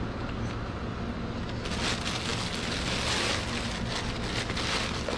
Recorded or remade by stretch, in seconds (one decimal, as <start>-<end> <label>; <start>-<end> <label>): 0.0-5.2 recorded